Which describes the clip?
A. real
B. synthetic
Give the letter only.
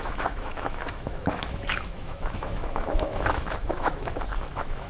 B